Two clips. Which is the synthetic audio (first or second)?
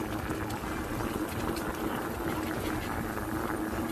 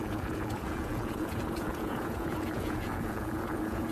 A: second